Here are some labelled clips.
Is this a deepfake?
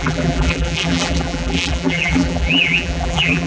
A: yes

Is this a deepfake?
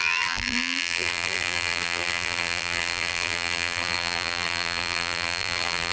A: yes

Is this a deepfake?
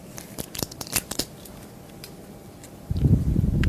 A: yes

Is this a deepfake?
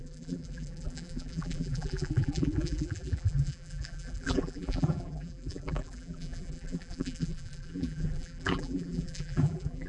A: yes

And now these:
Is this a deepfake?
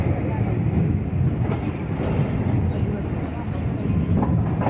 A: no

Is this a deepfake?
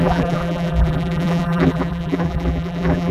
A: yes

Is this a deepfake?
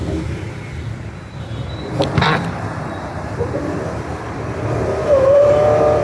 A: yes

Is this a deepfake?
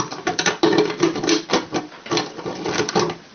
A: no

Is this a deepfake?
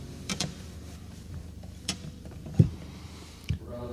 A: yes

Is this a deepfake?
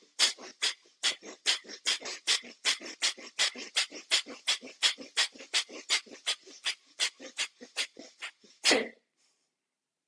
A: yes